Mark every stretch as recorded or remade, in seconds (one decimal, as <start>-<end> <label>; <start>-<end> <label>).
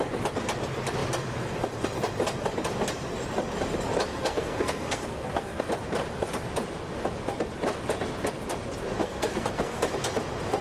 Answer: 0.0-4.1 recorded; 4.1-5.6 remade; 5.6-9.0 recorded; 9.0-9.9 remade; 9.9-10.6 recorded